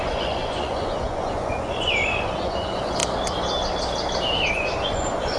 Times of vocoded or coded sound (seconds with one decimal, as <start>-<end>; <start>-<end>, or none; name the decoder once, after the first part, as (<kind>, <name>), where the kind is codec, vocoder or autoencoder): 0.0-3.0 (vocoder, Vocos); 4.5-5.4